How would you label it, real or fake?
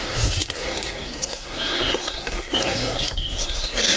fake